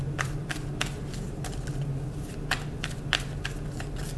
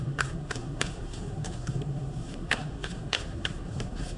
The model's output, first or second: second